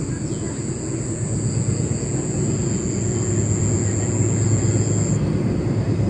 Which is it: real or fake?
real